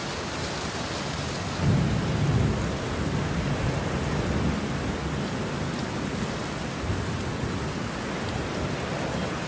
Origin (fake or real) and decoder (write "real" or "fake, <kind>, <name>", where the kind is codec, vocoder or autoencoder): real